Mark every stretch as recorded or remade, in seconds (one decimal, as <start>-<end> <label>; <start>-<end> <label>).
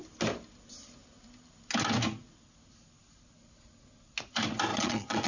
0.0-4.7 recorded; 4.7-5.3 remade